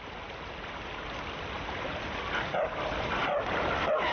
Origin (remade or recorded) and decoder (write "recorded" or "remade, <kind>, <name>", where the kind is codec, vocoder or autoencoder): remade, vocoder, BigVGAN v2